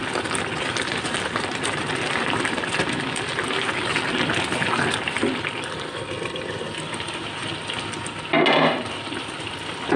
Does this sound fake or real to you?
real